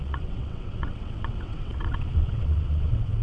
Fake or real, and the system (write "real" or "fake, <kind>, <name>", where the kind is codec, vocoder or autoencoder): fake, vocoder, WaveNeXt